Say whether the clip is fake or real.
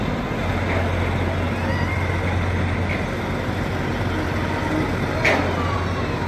real